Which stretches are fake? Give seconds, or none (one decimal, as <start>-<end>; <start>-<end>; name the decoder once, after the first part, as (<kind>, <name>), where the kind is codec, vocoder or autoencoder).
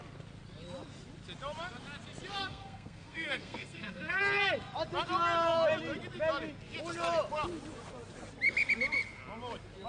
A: 2.4-4.2 (codec, SNAC)